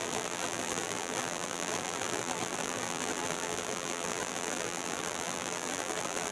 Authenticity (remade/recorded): remade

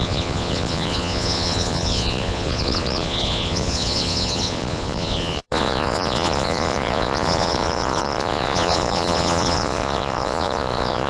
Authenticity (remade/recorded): remade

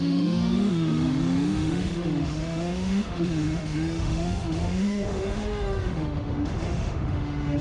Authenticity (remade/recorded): remade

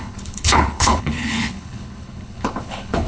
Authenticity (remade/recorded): remade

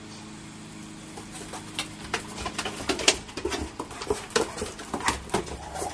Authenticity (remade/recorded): recorded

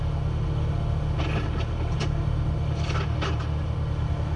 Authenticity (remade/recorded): recorded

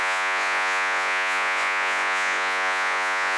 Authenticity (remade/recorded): remade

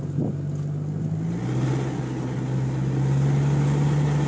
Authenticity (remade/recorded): recorded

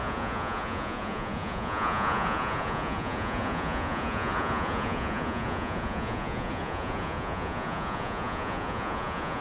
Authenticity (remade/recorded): remade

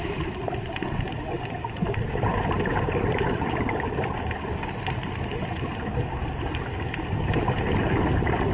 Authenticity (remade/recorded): recorded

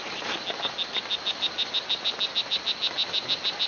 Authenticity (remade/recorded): recorded